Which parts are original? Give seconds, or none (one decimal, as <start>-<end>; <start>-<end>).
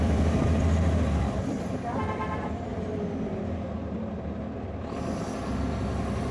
2.7-5.3